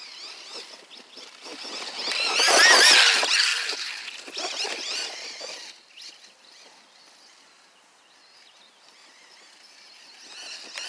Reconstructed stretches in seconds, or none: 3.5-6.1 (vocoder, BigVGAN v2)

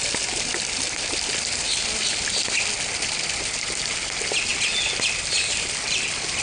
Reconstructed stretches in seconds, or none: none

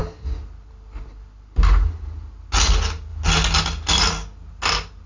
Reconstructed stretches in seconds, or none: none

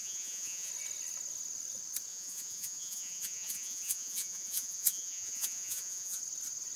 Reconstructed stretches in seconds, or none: 0.0-0.7 (vocoder, Vocos); 2.1-6.2

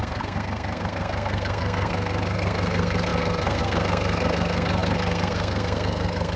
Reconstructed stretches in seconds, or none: 0.0-6.4 (codec, SNAC)

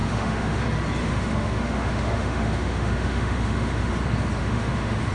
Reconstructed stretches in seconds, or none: 0.0-0.6 (autoencoder, DAC-VAE); 1.0-3.9; 4.4-5.1